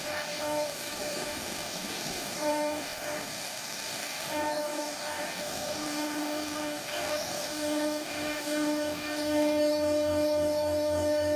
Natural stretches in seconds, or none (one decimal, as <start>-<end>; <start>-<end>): none